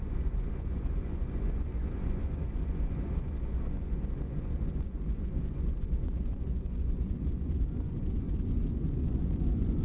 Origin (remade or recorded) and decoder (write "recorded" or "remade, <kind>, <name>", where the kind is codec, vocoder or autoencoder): remade, vocoder, Vocos